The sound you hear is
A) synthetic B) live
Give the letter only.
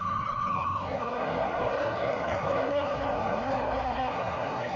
A